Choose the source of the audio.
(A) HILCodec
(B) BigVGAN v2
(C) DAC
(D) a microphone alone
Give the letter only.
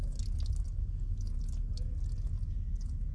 D